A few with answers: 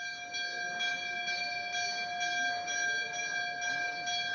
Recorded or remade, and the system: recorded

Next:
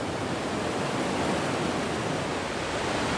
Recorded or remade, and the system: recorded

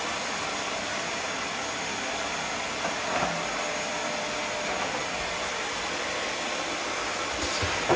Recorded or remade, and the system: recorded